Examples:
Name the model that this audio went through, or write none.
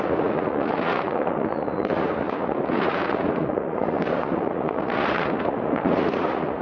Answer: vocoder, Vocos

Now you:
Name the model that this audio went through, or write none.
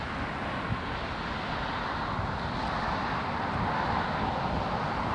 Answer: none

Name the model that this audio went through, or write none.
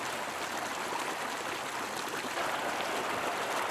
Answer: none